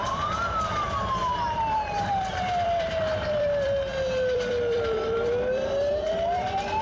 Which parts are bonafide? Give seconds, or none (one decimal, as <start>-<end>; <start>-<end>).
none